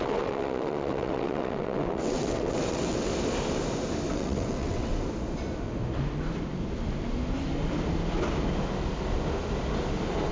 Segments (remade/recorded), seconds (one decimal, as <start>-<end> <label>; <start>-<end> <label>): 0.0-3.1 remade; 3.1-4.1 recorded; 4.1-4.9 remade; 4.9-10.3 recorded